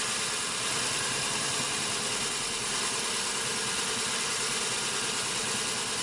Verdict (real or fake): real